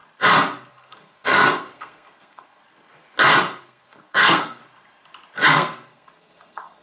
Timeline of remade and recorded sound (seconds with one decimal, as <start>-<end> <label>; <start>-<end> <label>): 0.0-0.7 recorded; 0.7-2.6 remade; 2.6-3.6 recorded; 3.6-4.6 remade; 4.6-5.5 recorded; 5.5-6.8 remade